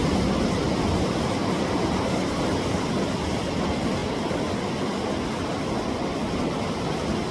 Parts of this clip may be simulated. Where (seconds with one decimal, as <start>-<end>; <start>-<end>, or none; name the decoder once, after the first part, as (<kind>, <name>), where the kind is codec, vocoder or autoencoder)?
none